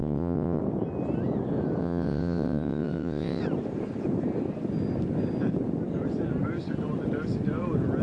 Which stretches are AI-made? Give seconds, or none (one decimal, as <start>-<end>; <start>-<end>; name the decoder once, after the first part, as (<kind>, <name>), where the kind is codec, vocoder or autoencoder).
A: 0.0-0.6 (vocoder, WaveNeXt); 1.8-3.4